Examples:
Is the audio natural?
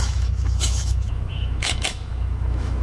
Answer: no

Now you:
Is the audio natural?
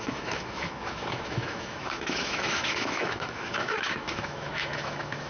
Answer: no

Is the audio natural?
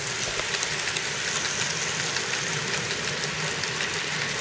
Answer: yes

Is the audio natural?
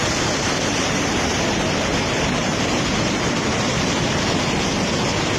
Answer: yes